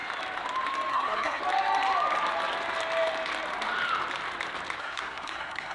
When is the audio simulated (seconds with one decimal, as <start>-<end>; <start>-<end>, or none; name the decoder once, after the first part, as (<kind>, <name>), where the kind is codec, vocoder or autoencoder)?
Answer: 0.9-1.4 (codec, SNAC); 4.8-5.7